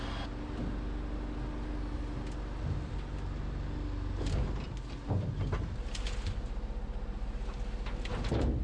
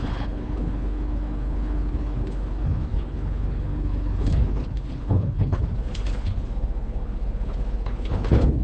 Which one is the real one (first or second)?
first